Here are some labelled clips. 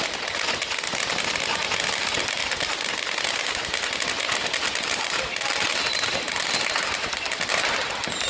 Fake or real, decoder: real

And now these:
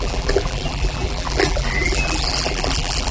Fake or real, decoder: fake, vocoder, BigVGAN v2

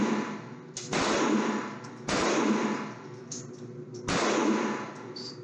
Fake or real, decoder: real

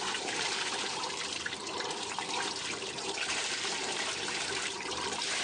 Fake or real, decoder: fake, vocoder, BigVGAN v2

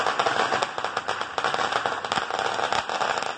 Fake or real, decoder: real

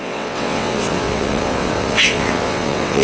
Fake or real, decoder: fake, vocoder, WaveNeXt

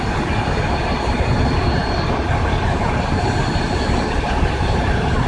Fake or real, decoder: real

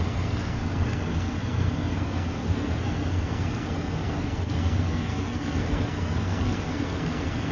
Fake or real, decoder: fake, codec, SNAC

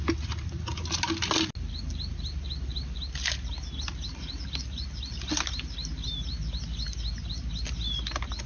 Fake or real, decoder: real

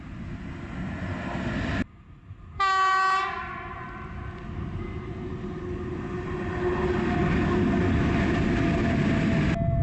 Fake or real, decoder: real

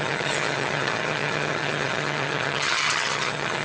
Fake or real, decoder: fake, vocoder, HiFi-GAN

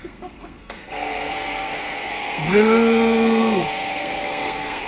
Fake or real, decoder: fake, codec, SNAC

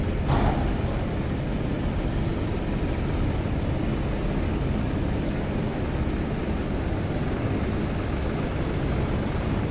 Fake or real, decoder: real